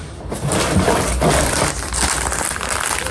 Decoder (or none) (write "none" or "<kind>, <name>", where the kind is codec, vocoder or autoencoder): none